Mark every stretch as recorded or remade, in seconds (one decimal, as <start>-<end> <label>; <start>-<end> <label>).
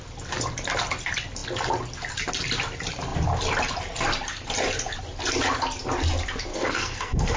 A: 0.0-6.5 recorded; 6.5-7.4 remade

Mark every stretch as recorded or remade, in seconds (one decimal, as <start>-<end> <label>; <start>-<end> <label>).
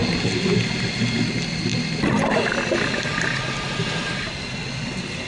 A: 0.0-5.3 recorded